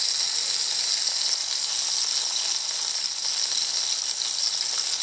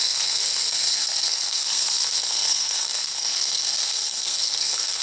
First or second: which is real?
first